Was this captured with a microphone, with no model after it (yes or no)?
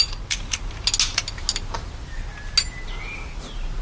yes